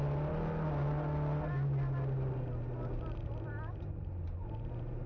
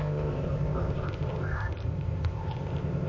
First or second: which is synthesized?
second